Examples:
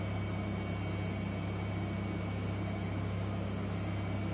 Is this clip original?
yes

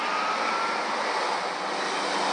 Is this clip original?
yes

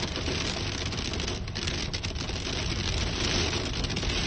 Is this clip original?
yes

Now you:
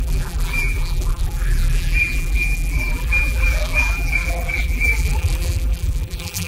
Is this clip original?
no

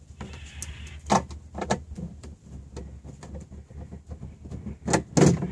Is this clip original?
yes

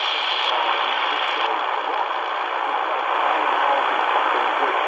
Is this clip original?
yes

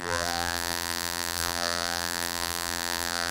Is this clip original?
no